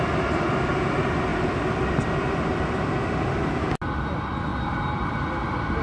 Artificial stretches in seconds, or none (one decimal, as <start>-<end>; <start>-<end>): none